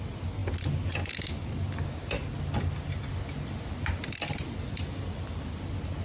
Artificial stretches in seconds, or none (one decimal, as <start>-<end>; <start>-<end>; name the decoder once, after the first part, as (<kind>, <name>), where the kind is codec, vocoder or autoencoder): none